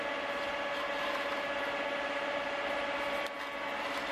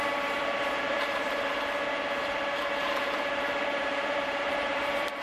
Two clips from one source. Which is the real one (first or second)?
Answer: first